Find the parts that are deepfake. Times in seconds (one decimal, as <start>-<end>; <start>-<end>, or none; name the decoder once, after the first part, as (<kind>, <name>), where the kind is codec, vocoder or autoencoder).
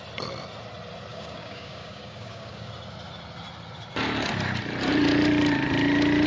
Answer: 1.1-2.7 (codec, DAC)